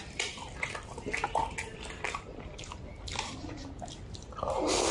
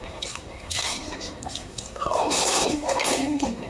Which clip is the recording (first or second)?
first